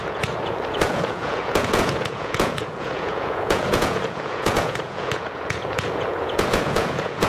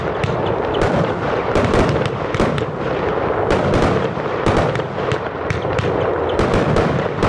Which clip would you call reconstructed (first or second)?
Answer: first